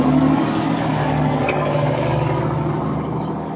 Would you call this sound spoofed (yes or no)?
yes